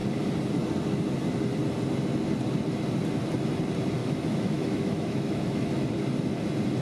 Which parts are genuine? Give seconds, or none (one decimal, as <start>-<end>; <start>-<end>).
0.0-4.0; 5.7-6.8

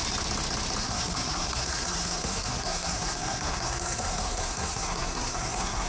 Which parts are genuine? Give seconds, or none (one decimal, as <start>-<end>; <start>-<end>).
0.0-0.8

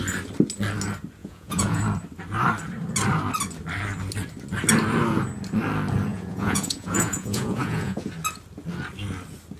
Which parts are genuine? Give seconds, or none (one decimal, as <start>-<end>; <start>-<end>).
0.0-1.2; 1.8-6.1; 8.1-9.6

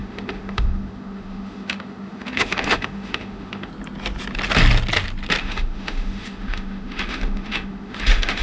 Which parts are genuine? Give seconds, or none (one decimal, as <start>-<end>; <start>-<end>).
3.7-5.4

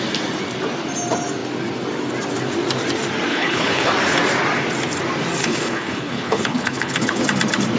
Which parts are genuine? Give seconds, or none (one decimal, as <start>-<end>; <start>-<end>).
0.0-3.3; 3.9-5.4; 7.2-7.8

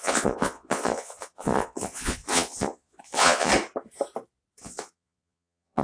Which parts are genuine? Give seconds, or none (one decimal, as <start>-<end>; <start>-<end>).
3.5-4.6

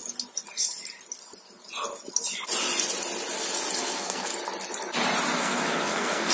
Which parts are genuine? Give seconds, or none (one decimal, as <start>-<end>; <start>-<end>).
0.0-3.8; 4.3-5.4

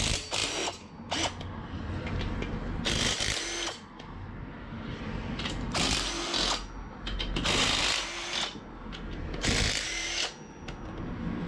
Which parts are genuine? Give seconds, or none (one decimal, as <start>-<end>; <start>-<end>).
0.0-11.5